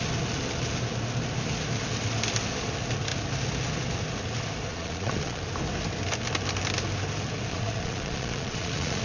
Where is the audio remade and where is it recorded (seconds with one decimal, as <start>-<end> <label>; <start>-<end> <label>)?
0.0-4.7 recorded; 4.7-5.4 remade; 5.4-7.5 recorded; 7.5-9.0 remade